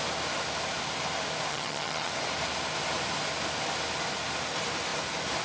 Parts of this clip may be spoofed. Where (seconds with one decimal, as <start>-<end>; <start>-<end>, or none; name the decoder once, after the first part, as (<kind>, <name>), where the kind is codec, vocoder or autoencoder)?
1.5-2.1 (vocoder, HiFi-GAN)